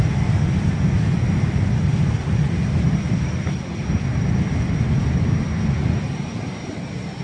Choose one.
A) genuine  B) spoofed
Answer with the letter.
A